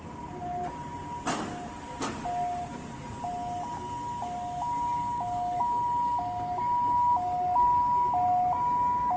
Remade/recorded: recorded